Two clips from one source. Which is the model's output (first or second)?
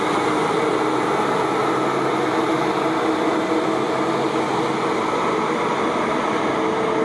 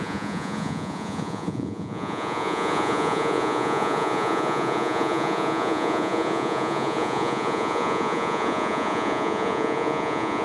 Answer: second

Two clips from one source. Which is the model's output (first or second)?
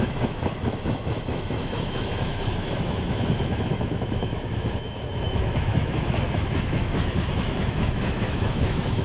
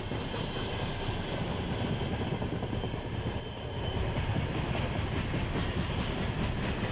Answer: first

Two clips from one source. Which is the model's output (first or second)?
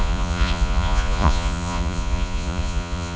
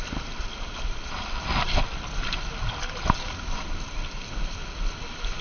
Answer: first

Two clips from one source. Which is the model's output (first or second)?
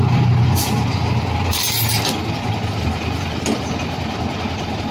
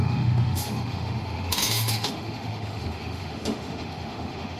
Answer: second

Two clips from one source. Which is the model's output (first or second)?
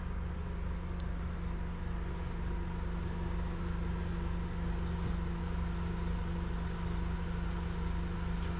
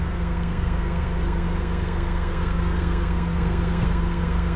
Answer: second